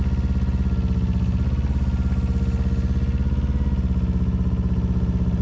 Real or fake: real